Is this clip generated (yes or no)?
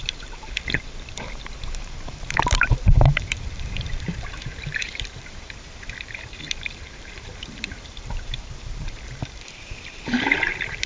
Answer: yes